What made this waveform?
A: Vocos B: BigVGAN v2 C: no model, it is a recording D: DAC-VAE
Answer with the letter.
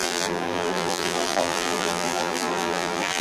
B